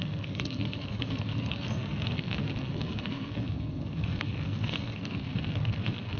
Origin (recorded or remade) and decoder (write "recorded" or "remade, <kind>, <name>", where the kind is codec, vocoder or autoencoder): remade, codec, SNAC